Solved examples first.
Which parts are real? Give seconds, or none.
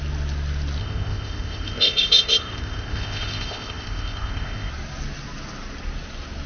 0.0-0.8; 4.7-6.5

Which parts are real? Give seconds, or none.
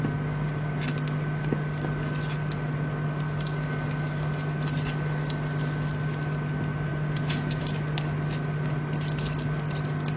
0.0-10.2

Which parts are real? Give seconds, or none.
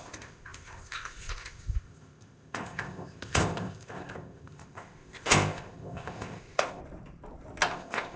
6.8-7.7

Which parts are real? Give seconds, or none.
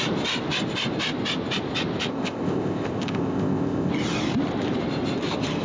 0.0-2.1; 3.9-5.6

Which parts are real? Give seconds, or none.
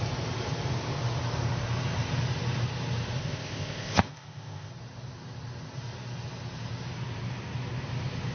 0.0-3.2; 4.7-8.3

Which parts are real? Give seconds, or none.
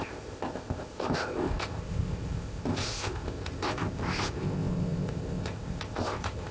none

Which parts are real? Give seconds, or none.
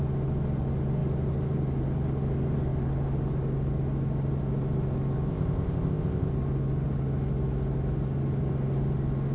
0.0-5.3; 6.3-9.3